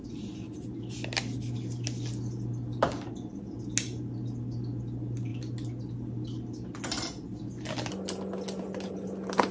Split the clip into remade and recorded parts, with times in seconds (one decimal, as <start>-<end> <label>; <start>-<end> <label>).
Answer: 0.0-9.5 recorded